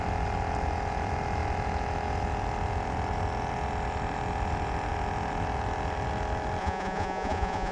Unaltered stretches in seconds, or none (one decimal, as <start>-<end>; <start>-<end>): 0.0-6.6